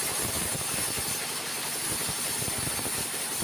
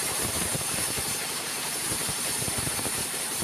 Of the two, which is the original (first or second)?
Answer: first